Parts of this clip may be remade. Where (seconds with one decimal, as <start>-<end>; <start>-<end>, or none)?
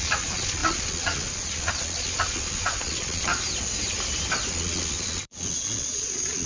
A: 0.0-3.3; 4.5-6.5